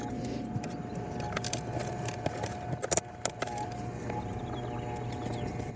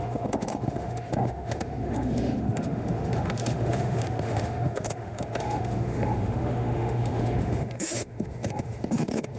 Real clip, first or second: first